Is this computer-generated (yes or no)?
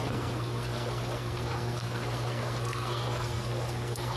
yes